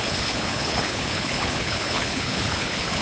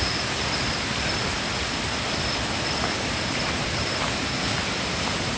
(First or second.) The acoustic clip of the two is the second